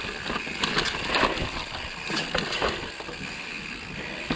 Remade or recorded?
recorded